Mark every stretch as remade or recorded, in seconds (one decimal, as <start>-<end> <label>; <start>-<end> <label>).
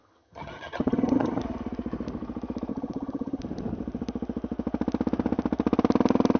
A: 0.0-1.4 remade; 1.4-2.7 recorded; 2.7-3.4 remade; 3.4-6.4 recorded